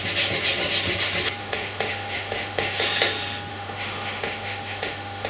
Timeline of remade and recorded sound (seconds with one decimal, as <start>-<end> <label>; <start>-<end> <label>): 0.0-1.4 recorded; 1.4-2.8 remade; 2.8-3.5 recorded; 3.5-5.3 remade